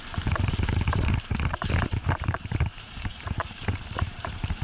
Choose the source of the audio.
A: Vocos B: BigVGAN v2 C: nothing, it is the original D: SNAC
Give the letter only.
B